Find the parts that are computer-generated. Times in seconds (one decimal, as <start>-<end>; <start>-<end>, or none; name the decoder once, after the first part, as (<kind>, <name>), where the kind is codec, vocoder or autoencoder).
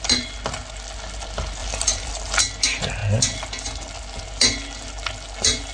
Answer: 1.6-2.4 (vocoder, BigVGAN v2)